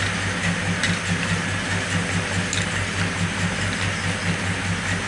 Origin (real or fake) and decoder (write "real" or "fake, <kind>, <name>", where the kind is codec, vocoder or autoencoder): real